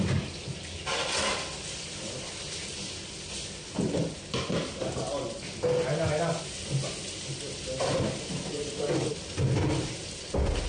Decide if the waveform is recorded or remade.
recorded